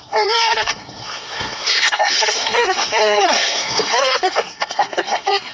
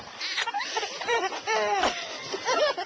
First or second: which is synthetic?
first